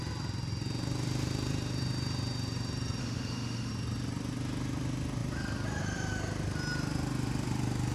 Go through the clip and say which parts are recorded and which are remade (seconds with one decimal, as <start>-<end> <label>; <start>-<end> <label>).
0.0-3.0 recorded; 3.0-3.7 remade; 3.7-7.9 recorded